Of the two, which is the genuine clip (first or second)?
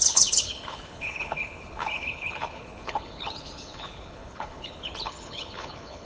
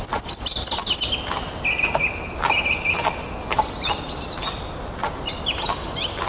second